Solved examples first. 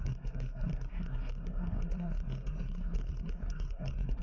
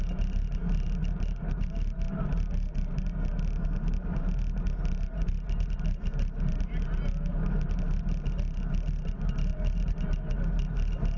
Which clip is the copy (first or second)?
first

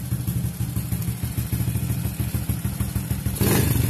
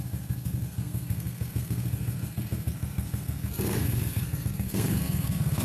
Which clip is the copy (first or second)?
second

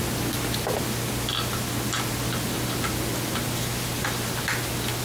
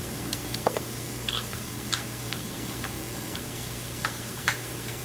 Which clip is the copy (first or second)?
second